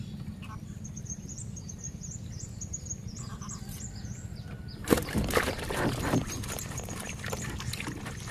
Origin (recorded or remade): remade